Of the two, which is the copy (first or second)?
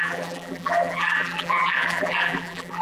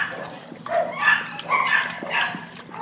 first